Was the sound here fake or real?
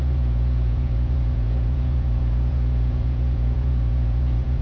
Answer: fake